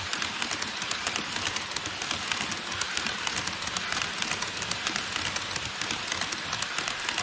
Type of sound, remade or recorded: recorded